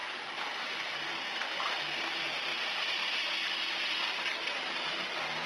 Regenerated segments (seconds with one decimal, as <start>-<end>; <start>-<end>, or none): 0.0-2.0; 2.5-4.0